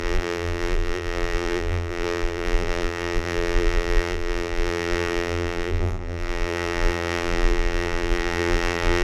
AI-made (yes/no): yes